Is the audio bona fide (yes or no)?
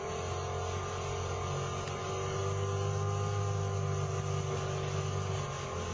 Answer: yes